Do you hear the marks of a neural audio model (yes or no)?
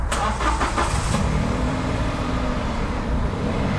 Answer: yes